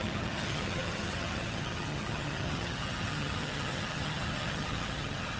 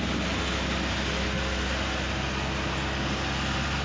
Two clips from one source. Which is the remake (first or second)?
first